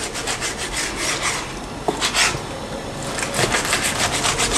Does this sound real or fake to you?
real